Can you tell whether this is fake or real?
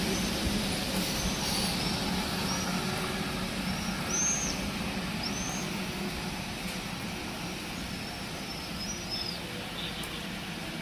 real